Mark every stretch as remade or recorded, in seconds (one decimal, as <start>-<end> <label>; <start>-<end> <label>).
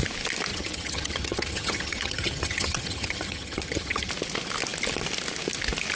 0.0-0.5 recorded; 0.5-4.1 remade; 4.1-6.0 recorded